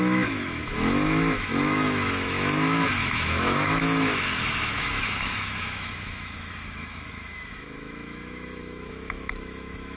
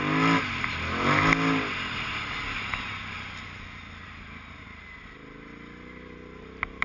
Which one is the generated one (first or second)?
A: first